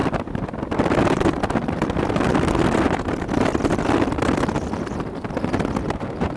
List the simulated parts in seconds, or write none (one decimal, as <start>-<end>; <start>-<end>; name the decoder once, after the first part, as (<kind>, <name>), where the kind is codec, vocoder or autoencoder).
0.0-3.8 (vocoder, BigVGAN v2)